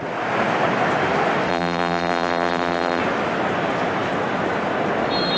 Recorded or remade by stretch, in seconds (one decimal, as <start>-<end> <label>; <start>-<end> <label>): 0.0-1.5 recorded; 1.5-3.0 remade; 3.0-5.4 recorded